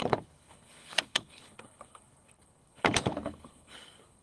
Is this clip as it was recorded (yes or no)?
no